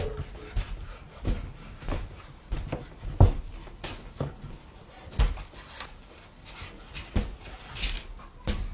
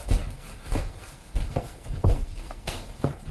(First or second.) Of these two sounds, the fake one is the second